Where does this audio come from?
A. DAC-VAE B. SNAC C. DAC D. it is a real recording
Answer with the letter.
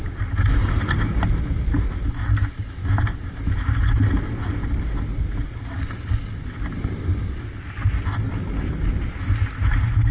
D